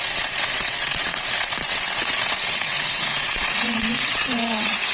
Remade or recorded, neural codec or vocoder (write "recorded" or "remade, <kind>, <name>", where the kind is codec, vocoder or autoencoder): remade, vocoder, WaveNeXt